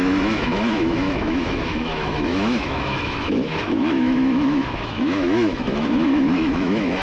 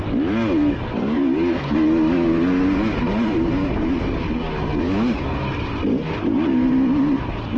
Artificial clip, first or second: first